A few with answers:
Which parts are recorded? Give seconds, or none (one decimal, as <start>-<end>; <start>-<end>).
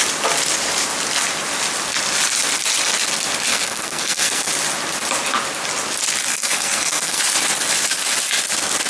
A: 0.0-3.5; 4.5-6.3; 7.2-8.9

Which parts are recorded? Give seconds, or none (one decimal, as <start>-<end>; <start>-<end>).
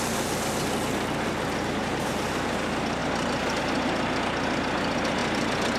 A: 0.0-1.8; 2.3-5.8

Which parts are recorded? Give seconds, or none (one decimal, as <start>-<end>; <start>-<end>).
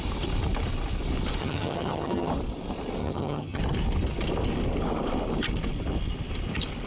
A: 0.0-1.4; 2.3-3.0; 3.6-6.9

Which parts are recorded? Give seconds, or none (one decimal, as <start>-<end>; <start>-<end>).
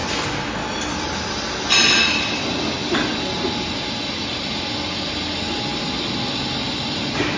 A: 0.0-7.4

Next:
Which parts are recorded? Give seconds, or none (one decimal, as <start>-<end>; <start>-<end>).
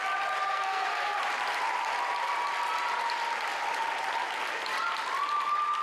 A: 0.0-0.5; 1.2-5.8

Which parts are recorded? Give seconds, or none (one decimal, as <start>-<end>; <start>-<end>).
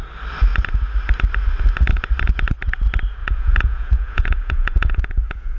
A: 0.0-3.2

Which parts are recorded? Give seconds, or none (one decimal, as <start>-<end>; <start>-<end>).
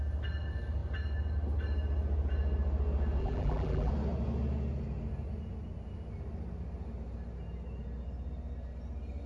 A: 0.0-3.2; 3.9-9.3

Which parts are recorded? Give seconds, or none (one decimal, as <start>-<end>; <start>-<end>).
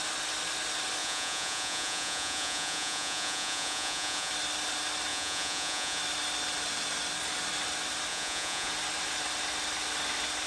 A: 0.0-1.0; 4.3-5.1; 6.0-8.1; 8.7-10.5